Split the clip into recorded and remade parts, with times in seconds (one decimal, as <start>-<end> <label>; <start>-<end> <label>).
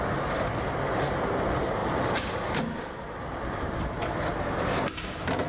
0.0-5.5 recorded